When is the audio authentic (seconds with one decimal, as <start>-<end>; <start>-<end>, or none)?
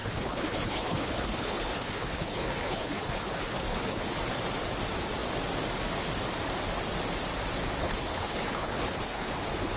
4.2-7.8; 9.3-9.8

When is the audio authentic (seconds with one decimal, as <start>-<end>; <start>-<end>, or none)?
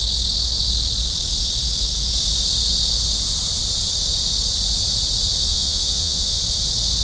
0.0-5.4; 6.4-7.0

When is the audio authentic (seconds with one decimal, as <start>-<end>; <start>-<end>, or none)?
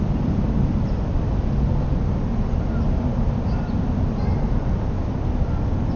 0.0-6.0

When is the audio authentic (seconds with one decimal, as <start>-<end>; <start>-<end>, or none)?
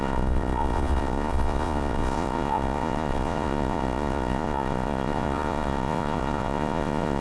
none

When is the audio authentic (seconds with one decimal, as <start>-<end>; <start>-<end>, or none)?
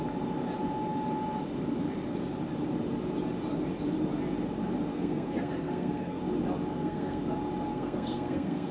0.0-4.9; 6.2-6.7; 7.2-7.7